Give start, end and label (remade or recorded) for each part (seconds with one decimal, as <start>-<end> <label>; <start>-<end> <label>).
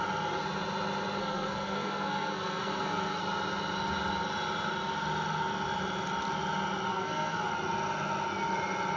0.0-1.2 recorded; 1.2-3.2 remade; 3.2-6.9 recorded; 6.9-7.5 remade; 7.5-9.0 recorded